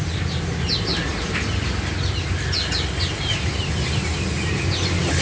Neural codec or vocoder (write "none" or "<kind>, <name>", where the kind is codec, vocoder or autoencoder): none